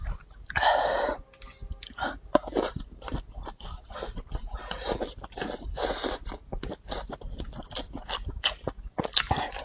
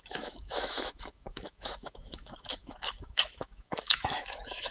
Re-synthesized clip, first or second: second